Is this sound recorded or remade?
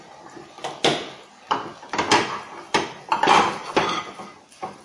recorded